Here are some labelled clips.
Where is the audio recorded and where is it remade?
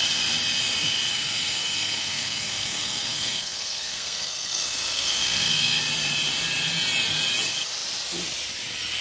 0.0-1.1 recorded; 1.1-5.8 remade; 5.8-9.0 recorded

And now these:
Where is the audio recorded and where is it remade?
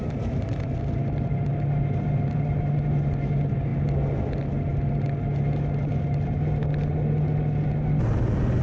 0.0-8.6 recorded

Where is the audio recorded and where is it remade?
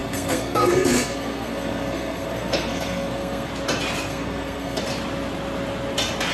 0.0-3.5 remade; 3.5-4.1 recorded; 4.1-4.8 remade; 4.8-6.3 recorded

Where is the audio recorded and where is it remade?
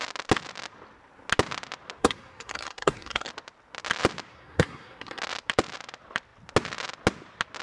0.0-2.0 recorded; 2.0-3.3 remade; 3.3-4.3 recorded; 4.3-5.2 remade; 5.2-7.6 recorded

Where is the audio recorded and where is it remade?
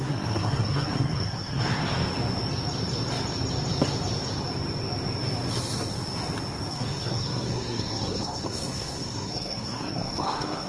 0.0-1.8 remade; 1.8-6.7 recorded; 6.7-10.7 remade